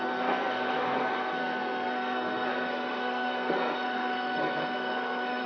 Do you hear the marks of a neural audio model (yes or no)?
yes